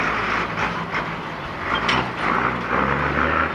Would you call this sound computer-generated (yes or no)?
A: no